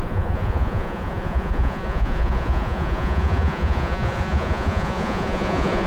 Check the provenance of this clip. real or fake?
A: fake